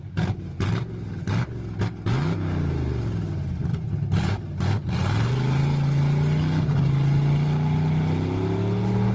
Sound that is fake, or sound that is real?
real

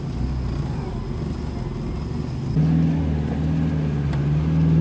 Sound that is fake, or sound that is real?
real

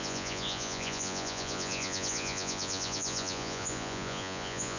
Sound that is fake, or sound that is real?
fake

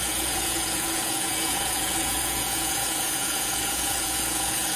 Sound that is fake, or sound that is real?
fake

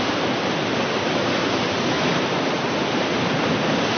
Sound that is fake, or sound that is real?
real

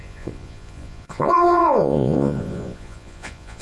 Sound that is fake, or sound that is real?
fake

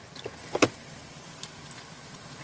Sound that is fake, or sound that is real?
real